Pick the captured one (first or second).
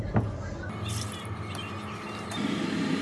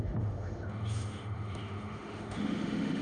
first